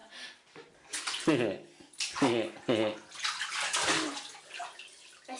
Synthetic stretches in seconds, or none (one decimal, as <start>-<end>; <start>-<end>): none